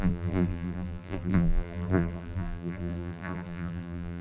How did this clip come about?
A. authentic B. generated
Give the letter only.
B